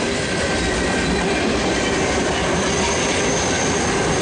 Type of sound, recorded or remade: remade